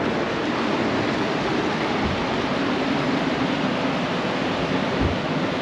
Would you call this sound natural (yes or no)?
yes